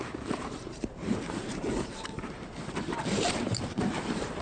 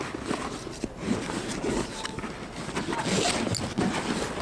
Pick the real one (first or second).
second